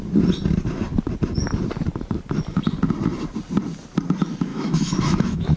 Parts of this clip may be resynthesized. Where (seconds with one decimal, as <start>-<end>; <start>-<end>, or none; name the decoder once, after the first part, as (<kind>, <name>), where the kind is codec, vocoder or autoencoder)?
4.5-5.6 (autoencoder, DAC-VAE)